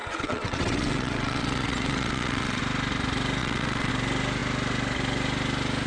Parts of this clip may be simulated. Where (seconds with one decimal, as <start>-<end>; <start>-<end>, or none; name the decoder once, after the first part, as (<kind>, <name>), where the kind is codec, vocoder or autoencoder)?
0.0-2.6 (vocoder, WaveNeXt); 3.4-3.9